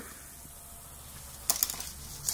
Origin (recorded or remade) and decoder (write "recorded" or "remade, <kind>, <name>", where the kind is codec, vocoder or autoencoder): recorded